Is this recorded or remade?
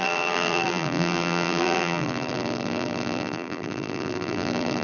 remade